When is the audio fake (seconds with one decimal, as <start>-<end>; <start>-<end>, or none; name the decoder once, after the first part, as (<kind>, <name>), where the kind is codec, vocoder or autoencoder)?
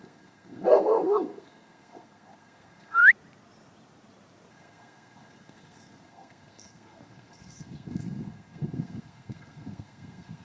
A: 0.0-3.0 (codec, SNAC); 4.5-10.4